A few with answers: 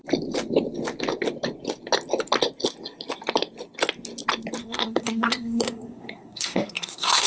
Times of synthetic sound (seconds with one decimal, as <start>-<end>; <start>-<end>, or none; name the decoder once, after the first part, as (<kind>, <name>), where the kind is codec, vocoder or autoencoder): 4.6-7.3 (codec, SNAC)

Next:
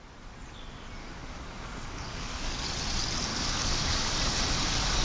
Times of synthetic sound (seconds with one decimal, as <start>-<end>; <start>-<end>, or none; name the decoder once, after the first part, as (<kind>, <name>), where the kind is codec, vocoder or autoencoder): 1.0-2.7 (codec, DAC); 3.3-4.4

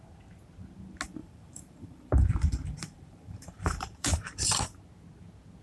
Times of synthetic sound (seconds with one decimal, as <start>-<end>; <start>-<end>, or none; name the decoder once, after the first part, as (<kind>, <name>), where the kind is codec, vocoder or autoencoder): 1.2-4.6 (vocoder, BigVGAN v2)

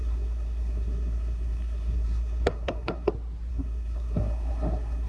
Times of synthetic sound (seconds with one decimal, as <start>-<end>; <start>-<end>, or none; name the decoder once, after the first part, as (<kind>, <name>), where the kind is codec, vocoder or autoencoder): 0.0-3.1 (codec, SNAC); 3.5-5.1

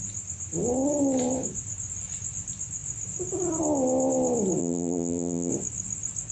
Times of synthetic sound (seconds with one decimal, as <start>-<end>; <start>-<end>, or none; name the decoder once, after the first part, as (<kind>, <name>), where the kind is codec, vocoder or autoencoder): 4.6-5.5 (vocoder, BigVGAN v2)

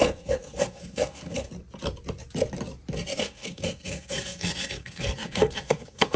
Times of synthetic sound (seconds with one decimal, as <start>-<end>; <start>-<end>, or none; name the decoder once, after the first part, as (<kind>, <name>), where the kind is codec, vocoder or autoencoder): 0.0-1.5 (codec, SNAC); 3.2-6.2